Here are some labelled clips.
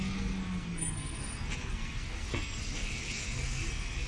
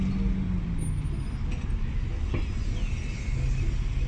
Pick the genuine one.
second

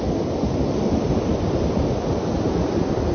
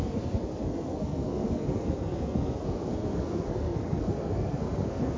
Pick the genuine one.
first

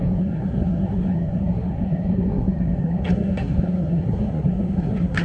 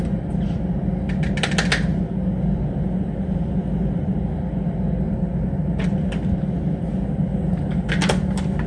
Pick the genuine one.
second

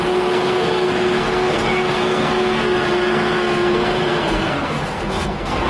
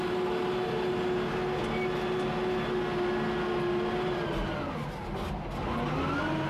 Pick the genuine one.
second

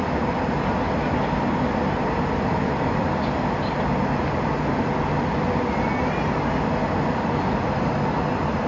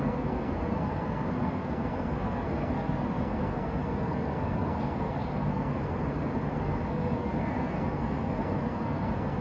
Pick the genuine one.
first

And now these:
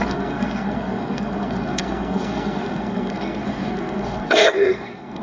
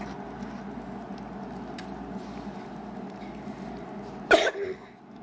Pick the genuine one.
second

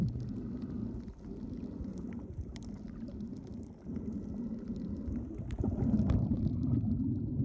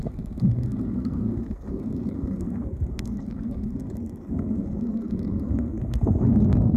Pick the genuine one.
first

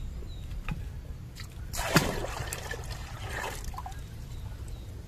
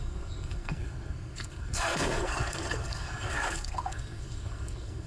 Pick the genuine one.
first